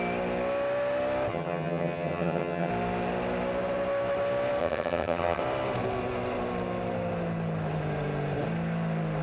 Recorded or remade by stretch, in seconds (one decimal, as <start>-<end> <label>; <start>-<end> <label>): 0.0-1.3 recorded; 1.3-2.7 remade; 2.7-4.6 recorded; 4.6-5.4 remade; 5.4-9.2 recorded

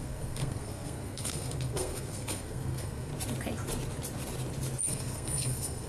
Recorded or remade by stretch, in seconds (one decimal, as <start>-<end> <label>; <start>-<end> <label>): 0.0-3.1 remade; 3.1-4.9 recorded; 4.9-5.9 remade